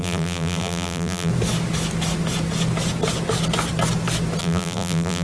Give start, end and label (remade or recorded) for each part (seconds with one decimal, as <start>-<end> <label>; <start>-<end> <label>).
0.0-1.3 remade; 1.3-4.4 recorded; 4.4-5.2 remade